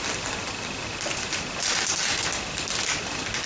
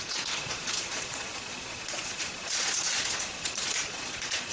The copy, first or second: second